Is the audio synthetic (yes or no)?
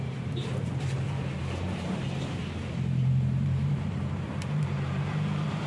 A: yes